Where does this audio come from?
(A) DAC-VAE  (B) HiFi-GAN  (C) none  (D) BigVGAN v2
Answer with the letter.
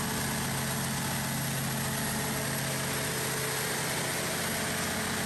C